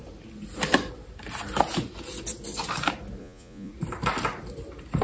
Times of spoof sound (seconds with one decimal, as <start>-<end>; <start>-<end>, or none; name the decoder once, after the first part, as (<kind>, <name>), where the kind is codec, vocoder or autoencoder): 3.2-3.7 (vocoder, Vocos)